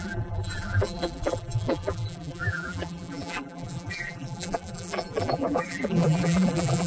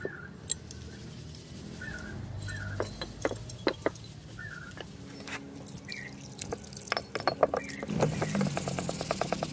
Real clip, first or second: second